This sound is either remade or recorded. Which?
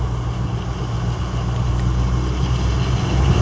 recorded